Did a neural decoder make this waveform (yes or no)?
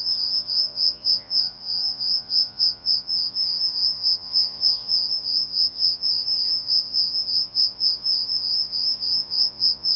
yes